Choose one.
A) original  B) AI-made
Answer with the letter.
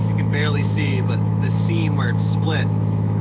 B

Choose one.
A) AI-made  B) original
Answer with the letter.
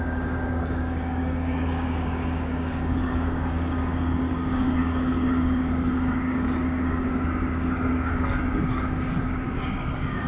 A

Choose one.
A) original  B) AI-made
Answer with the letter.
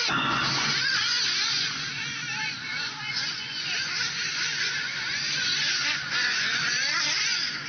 B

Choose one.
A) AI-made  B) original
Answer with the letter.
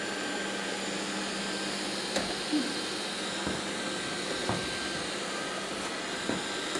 B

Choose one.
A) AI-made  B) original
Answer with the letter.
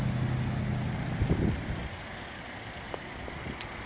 B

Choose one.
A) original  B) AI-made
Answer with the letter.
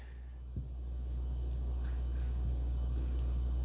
A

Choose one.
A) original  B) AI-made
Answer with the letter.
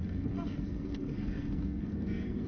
B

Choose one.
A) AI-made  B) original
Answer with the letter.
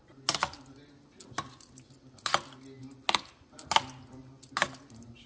B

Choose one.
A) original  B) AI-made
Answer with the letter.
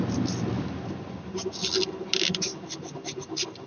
A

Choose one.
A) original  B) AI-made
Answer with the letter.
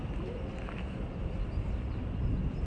A